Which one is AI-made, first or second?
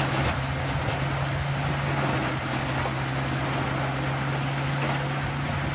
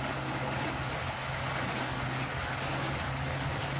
second